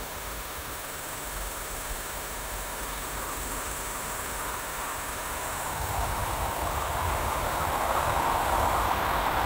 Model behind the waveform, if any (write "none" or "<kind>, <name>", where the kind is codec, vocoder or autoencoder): autoencoder, DAC-VAE